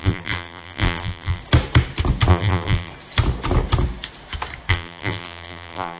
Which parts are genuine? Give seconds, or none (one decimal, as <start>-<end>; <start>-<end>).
1.4-2.3; 2.9-4.7